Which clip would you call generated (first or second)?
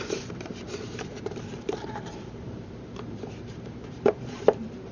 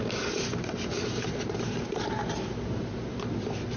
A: first